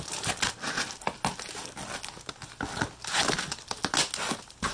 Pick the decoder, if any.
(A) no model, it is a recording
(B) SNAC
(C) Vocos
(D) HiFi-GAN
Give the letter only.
A